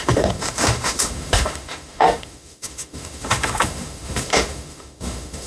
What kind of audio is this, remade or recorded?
remade